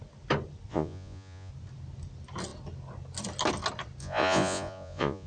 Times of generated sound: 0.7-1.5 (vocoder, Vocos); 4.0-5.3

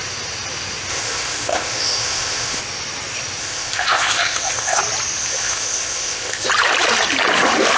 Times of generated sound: 0.9-2.6 (codec, ZipCodec); 3.4-4.8; 5.2-6.5

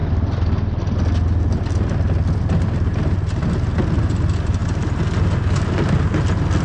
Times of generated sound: none

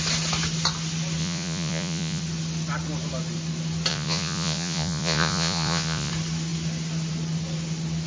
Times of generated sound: 1.2-2.2 (vocoder, Vocos); 3.9-6.1